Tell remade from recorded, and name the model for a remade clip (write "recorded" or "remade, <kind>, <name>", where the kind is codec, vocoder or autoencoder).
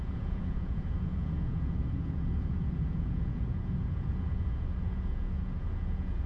remade, vocoder, Vocos